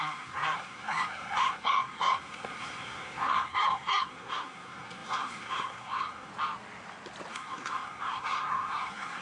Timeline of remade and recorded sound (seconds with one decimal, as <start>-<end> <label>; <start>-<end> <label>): 0.0-6.3 remade; 6.3-7.3 recorded; 7.3-9.2 remade